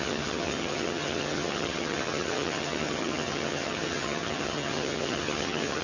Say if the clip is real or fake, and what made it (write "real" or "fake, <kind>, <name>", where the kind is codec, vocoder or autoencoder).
fake, vocoder, HiFi-GAN